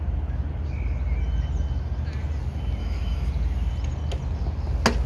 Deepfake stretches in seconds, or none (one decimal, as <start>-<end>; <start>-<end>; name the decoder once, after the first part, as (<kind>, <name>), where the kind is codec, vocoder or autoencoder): 2.8-3.3 (autoencoder, DAC-VAE)